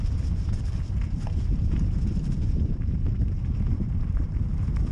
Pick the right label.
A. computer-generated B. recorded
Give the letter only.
A